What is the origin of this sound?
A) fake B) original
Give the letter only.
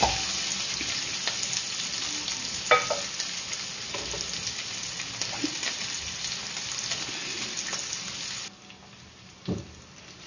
B